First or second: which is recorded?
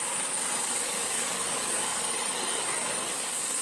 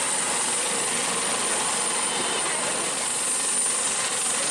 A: second